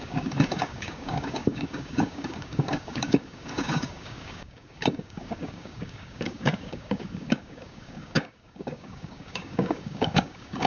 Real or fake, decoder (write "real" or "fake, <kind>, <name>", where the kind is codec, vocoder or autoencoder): fake, codec, DAC